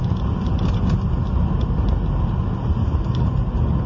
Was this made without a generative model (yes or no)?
yes